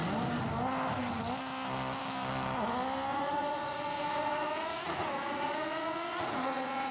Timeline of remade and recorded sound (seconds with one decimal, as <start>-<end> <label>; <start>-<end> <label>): 0.0-3.1 recorded; 3.1-6.9 remade